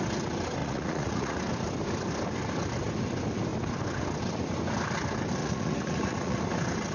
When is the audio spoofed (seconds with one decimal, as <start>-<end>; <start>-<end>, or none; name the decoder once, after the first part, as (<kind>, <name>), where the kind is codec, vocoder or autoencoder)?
0.6-1.4 (vocoder, Vocos); 5.4-6.4